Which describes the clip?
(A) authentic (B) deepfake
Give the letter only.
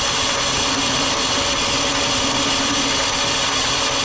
A